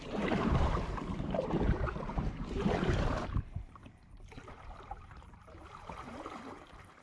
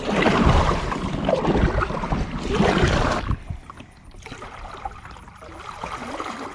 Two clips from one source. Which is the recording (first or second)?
second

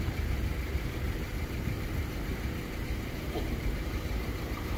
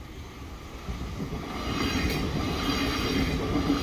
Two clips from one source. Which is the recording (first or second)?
second